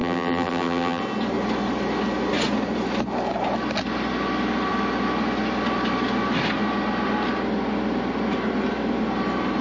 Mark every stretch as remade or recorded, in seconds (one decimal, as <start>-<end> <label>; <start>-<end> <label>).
0.0-1.0 remade; 1.0-9.6 recorded